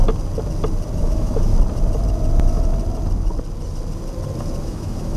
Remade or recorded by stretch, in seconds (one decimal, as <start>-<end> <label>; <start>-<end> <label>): 0.0-1.0 recorded; 1.0-1.5 remade; 1.5-4.6 recorded; 4.6-5.2 remade